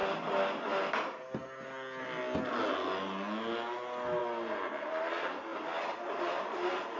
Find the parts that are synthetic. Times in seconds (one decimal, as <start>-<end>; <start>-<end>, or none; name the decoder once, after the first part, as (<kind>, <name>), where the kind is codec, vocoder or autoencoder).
none